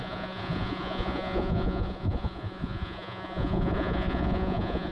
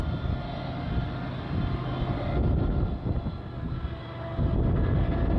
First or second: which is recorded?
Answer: second